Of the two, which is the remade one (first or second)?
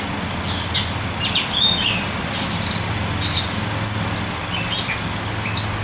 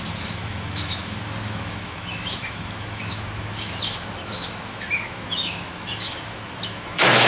second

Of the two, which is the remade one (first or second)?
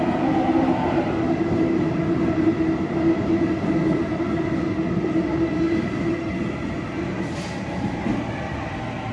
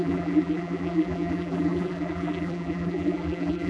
second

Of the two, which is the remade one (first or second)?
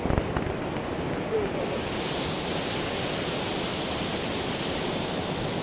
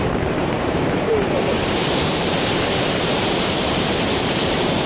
second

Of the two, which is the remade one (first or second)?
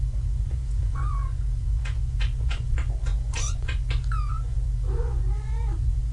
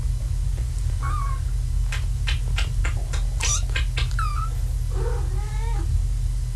first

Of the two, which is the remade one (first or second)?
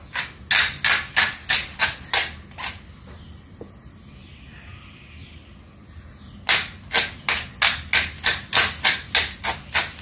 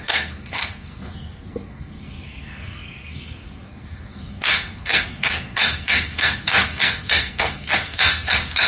second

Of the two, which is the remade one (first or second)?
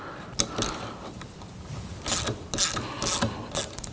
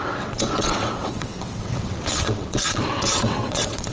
second